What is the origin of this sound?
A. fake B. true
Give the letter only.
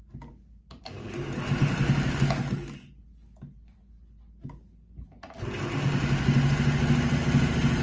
B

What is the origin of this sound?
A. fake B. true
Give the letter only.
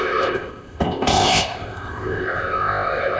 A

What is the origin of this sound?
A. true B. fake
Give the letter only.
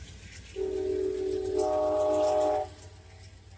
A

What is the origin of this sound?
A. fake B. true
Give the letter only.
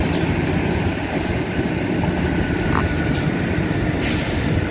B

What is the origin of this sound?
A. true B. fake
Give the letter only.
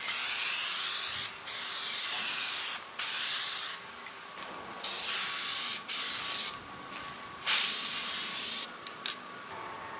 A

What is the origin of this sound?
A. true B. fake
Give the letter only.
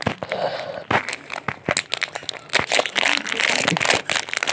A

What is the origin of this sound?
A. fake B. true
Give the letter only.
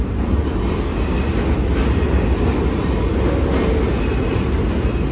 B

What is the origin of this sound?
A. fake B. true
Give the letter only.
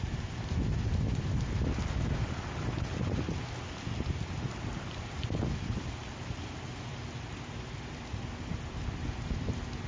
B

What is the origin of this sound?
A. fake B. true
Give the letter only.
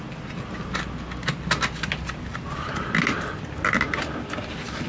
B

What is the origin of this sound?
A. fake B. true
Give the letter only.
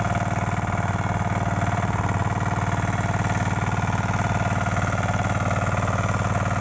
B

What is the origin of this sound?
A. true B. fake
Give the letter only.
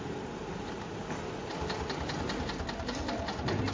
A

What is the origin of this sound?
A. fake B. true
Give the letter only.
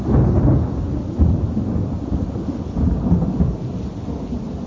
B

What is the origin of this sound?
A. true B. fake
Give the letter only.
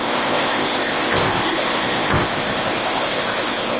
B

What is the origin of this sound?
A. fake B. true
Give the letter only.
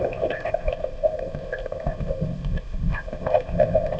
A